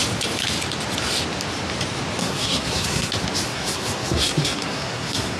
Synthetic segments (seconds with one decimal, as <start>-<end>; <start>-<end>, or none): 2.2-3.1; 3.5-5.4